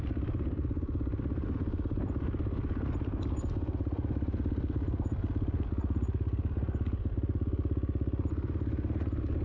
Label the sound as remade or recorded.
recorded